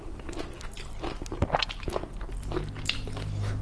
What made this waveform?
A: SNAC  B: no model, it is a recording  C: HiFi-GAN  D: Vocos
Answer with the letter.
B